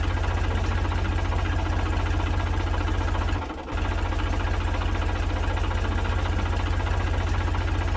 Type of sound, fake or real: real